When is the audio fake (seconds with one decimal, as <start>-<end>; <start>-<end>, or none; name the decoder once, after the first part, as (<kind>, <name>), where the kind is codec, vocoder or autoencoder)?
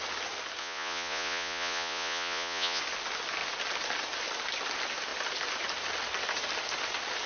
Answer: 0.6-2.8 (vocoder, Vocos)